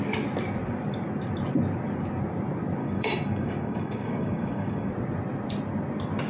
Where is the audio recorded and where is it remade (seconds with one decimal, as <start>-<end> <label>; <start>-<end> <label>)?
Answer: 0.0-2.8 recorded; 2.8-4.9 remade; 4.9-6.3 recorded

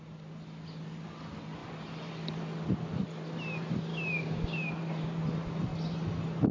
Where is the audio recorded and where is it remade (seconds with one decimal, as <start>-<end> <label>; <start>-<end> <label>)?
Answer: 0.0-3.9 recorded; 3.9-4.7 remade; 4.7-6.5 recorded

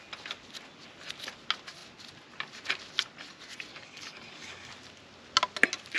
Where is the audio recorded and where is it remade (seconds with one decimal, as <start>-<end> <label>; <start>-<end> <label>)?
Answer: 0.0-3.7 recorded; 3.7-4.7 remade; 4.7-6.0 recorded